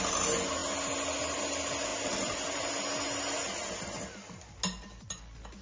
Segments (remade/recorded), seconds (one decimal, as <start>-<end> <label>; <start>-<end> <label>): 0.0-5.6 recorded